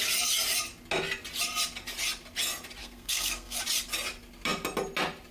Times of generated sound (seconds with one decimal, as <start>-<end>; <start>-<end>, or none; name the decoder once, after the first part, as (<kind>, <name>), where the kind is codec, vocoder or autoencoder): 2.8-3.6 (codec, SNAC)

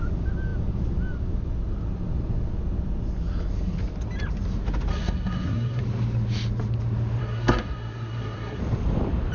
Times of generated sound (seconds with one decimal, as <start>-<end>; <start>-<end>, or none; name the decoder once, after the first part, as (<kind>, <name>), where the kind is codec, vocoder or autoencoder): 4.9-5.8 (codec, SNAC); 7.2-8.6

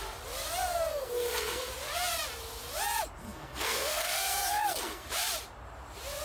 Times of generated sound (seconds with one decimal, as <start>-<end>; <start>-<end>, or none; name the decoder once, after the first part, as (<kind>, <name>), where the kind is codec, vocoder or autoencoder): 0.9-1.7 (codec, SNAC); 3.2-5.1

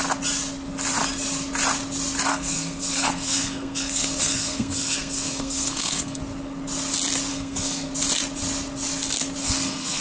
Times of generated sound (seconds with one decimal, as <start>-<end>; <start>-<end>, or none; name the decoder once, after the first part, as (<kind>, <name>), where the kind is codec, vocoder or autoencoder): 2.3-6.2 (codec, SNAC); 7.3-7.9; 9.4-10.0

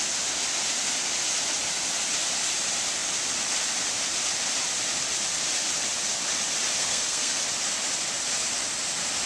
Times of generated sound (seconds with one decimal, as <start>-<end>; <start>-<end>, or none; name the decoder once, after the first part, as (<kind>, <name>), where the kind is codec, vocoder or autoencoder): 6.8-7.4 (codec, SNAC)

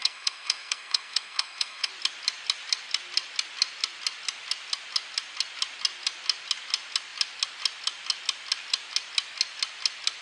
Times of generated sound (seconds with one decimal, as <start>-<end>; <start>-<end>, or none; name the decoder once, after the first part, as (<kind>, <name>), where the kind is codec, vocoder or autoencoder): 0.0-1.9 (codec, SNAC)

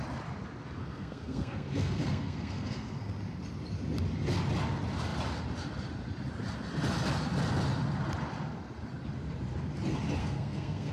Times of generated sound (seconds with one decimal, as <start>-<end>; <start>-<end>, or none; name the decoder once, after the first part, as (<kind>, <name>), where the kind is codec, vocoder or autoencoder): 0.8-3.1 (codec, SNAC); 10.2-10.9

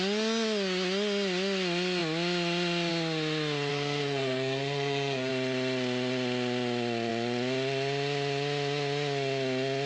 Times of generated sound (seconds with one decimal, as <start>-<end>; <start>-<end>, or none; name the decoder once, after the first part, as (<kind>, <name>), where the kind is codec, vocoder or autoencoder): 3.7-5.3 (codec, SNAC)